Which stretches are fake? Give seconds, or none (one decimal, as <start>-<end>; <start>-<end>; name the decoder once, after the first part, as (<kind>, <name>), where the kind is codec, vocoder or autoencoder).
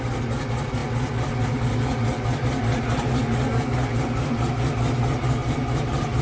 none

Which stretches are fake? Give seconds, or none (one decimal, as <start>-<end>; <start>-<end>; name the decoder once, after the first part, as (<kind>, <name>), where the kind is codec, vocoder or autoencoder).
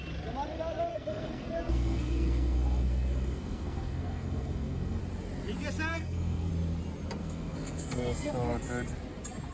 0.9-5.0 (codec, SNAC); 5.9-6.5; 7.2-8.3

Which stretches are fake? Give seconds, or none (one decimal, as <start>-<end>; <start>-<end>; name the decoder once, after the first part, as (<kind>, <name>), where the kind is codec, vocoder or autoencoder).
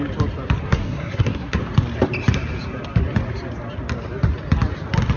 0.6-1.6 (codec, SNAC)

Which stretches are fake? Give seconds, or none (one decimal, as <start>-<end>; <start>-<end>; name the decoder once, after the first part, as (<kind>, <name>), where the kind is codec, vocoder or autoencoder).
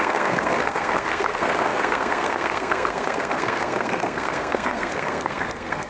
0.0-5.9 (codec, SNAC)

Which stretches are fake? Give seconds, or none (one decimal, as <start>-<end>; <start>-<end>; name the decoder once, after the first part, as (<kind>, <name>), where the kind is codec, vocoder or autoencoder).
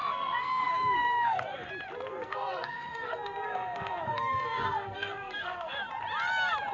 0.0-1.7 (codec, SNAC); 2.1-5.9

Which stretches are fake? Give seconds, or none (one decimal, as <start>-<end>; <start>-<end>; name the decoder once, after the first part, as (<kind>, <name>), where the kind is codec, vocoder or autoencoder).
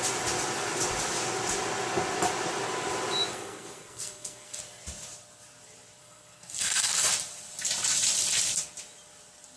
3.3-4.6 (codec, SNAC); 6.0-7.1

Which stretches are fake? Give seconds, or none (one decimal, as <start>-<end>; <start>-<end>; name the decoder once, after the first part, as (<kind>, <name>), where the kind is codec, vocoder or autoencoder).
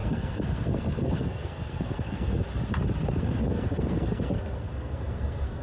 0.0-2.4 (codec, SNAC); 3.0-5.6